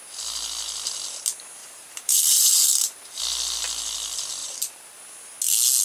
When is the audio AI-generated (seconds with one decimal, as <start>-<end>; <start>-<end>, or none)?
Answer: 1.6-3.2; 4.4-5.0